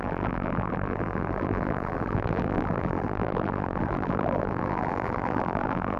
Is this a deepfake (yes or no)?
yes